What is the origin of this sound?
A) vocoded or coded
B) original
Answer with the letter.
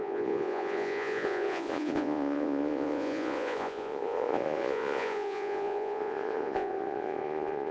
A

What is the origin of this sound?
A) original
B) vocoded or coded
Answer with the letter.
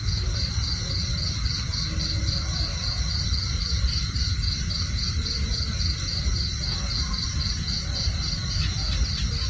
A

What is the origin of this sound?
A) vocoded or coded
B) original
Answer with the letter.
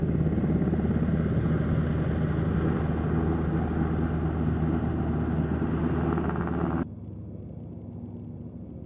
B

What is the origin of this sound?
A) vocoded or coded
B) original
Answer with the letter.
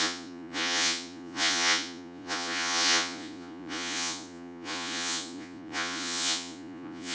A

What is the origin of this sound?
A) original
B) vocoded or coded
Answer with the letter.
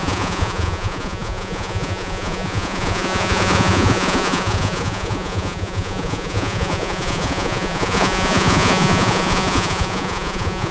B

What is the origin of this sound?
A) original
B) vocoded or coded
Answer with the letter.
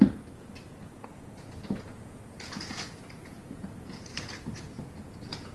B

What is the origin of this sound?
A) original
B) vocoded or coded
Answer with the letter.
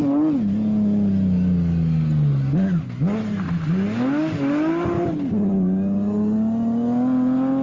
A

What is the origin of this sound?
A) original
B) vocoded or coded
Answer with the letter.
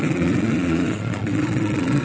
B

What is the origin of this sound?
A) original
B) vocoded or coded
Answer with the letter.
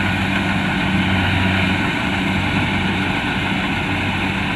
A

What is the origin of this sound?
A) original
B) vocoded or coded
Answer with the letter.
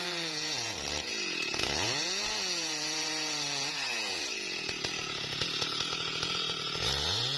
B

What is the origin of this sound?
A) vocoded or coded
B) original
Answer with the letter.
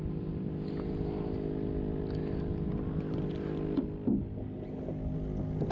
B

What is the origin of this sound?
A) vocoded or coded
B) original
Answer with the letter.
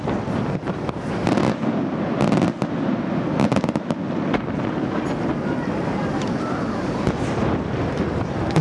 B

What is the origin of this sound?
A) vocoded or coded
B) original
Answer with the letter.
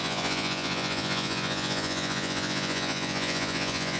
A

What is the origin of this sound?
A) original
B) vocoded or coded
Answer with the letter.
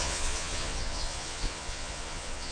B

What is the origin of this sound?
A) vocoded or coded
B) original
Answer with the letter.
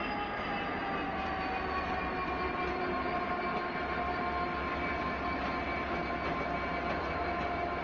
B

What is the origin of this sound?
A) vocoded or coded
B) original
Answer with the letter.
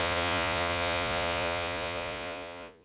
A